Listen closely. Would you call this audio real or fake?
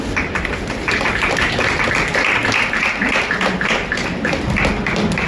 fake